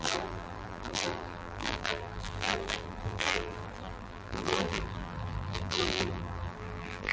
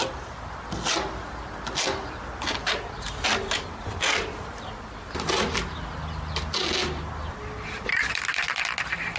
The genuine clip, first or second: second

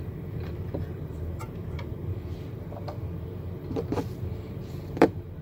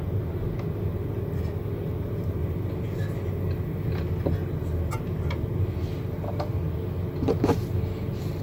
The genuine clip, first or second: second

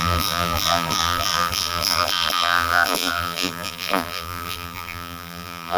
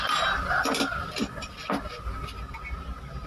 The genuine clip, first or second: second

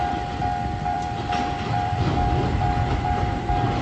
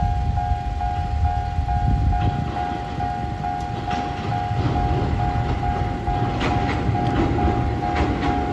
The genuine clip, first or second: second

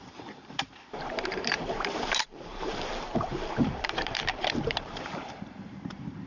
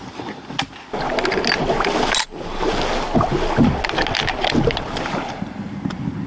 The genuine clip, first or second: second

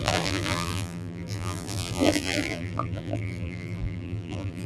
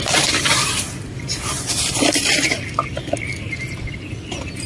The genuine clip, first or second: second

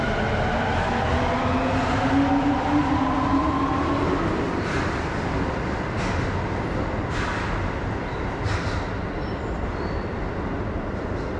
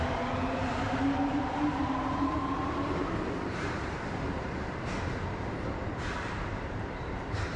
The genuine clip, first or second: first